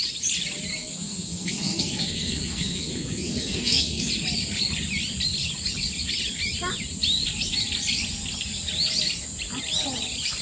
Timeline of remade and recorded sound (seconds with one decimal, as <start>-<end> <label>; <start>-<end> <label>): 0.0-0.8 recorded; 0.8-4.1 remade; 4.1-10.4 recorded